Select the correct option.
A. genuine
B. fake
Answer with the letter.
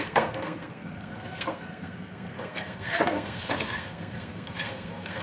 B